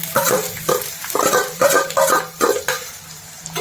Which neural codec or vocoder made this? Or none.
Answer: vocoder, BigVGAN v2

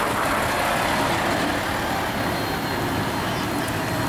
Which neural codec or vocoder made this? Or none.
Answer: none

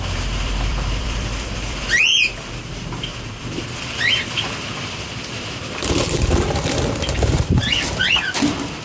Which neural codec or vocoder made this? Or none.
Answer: vocoder, BigVGAN v2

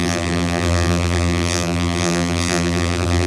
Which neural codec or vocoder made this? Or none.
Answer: vocoder, BigVGAN v2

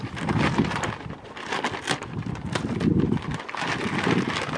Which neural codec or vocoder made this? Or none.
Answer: none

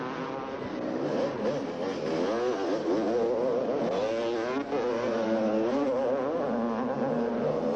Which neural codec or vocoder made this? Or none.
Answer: none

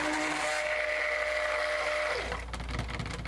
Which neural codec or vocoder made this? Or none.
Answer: none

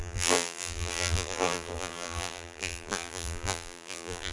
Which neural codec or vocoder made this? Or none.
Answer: vocoder, BigVGAN v2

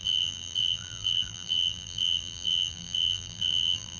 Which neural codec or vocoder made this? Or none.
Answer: vocoder, BigVGAN v2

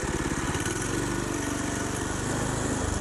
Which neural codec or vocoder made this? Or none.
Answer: none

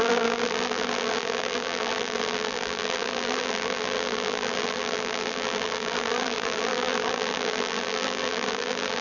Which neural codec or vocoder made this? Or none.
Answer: vocoder, BigVGAN v2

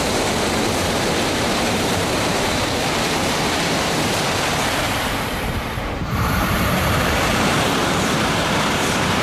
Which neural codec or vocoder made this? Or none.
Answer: vocoder, BigVGAN v2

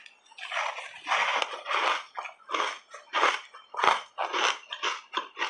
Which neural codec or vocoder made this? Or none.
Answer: none